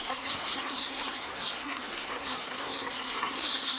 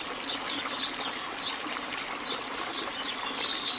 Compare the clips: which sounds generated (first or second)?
first